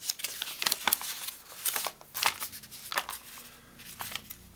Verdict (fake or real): real